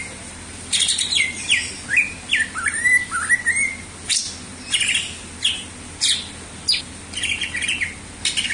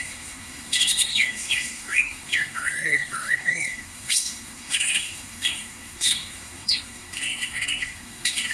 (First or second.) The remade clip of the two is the second